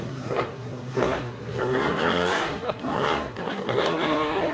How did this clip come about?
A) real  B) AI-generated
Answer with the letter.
B